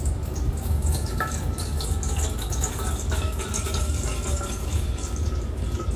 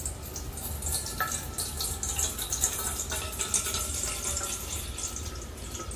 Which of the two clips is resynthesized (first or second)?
first